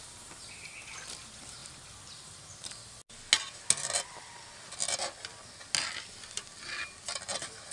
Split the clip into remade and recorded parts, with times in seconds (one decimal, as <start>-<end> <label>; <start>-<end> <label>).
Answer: 0.0-7.7 recorded